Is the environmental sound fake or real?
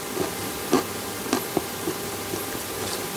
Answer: real